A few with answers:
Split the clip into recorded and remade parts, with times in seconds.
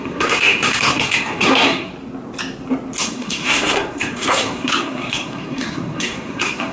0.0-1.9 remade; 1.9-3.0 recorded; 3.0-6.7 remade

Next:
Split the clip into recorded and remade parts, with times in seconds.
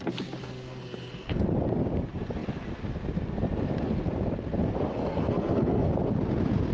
0.0-0.4 recorded; 0.4-1.4 remade; 1.4-4.9 recorded; 4.9-5.9 remade; 5.9-6.7 recorded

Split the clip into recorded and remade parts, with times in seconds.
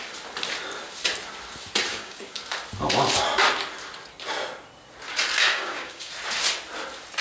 0.0-1.9 recorded; 1.9-2.4 remade; 2.4-5.5 recorded; 5.5-6.1 remade; 6.1-7.2 recorded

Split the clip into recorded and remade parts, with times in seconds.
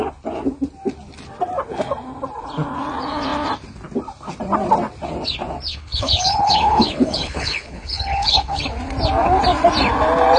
0.0-5.7 recorded; 5.7-8.6 remade; 8.6-10.4 recorded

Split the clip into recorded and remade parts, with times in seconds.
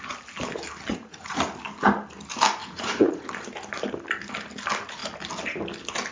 0.0-0.9 recorded; 0.9-1.5 remade; 1.5-2.6 recorded; 2.6-3.3 remade; 3.3-6.1 recorded